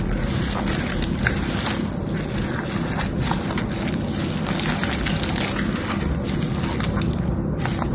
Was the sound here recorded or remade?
recorded